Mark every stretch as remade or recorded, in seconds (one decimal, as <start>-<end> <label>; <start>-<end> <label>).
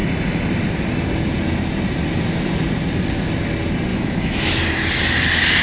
0.0-3.9 recorded; 3.9-4.6 remade; 4.6-5.6 recorded